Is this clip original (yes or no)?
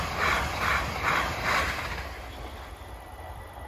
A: yes